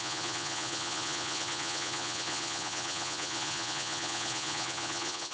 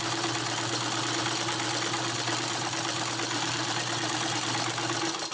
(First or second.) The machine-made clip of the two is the first